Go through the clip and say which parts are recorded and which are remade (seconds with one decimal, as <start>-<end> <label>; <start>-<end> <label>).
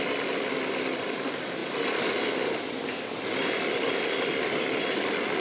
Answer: 0.0-5.4 recorded